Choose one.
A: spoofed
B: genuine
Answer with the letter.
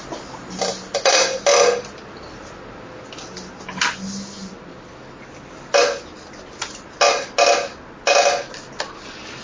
B